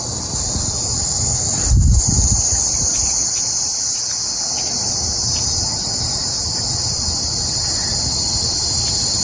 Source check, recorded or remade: recorded